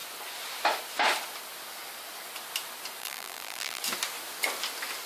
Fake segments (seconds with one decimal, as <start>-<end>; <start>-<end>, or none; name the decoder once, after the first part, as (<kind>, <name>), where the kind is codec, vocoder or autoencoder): 3.0-3.8 (vocoder, BigVGAN v2)